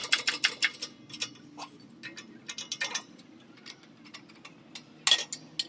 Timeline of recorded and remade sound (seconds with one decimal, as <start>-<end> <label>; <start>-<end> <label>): 0.0-5.7 recorded